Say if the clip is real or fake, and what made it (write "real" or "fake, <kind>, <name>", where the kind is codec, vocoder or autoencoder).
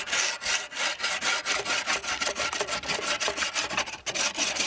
real